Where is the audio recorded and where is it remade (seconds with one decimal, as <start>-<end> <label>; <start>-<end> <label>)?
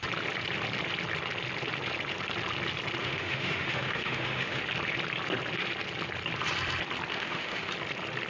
0.0-3.0 recorded; 3.0-4.6 remade; 4.6-7.1 recorded; 7.1-7.7 remade; 7.7-8.3 recorded